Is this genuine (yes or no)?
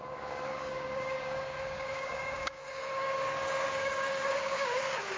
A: no